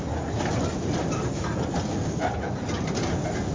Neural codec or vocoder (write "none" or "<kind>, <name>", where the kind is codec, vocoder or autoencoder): none